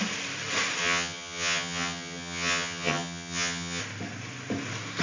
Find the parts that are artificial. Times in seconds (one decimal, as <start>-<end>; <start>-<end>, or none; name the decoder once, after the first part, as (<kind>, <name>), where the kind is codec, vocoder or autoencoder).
0.8-3.8 (vocoder, HiFi-GAN)